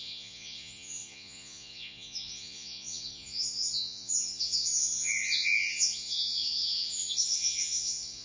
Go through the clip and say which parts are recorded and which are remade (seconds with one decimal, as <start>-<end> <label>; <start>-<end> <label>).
0.0-8.2 remade